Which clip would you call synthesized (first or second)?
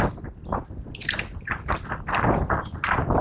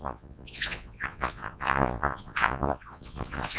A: second